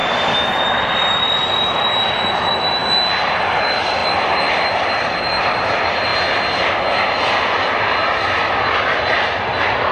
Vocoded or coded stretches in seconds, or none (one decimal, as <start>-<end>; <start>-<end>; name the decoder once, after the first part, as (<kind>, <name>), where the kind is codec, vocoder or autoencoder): 0.0-1.3 (vocoder, BigVGAN v2); 4.0-5.2